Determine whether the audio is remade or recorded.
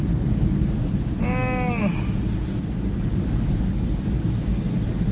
recorded